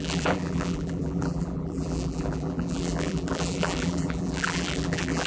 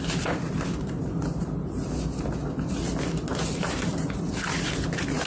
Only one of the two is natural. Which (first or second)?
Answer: second